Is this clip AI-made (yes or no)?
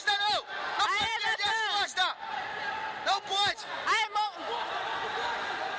yes